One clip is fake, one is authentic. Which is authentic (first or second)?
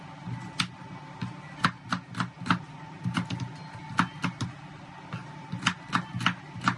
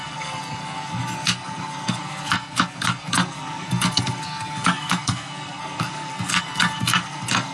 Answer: first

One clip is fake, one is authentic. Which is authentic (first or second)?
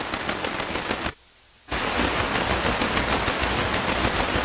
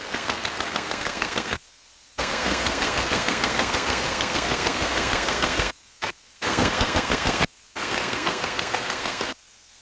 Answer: first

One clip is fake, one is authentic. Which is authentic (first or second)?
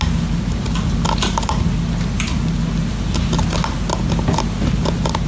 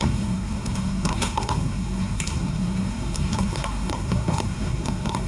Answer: first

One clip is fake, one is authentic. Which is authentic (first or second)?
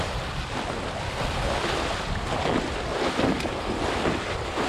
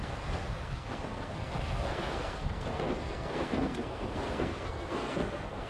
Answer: first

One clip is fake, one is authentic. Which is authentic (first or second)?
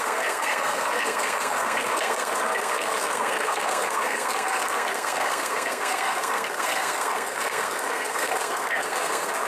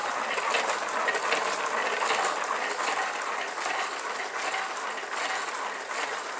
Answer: second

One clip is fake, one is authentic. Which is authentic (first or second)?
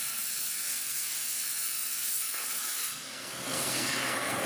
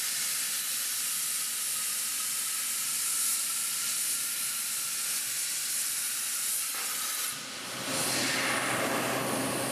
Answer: second